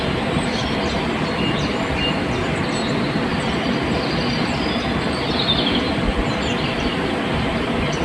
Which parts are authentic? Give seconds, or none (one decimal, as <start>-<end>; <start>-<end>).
2.4-7.1